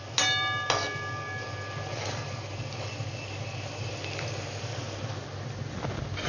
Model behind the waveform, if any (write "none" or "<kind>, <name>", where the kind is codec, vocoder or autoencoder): none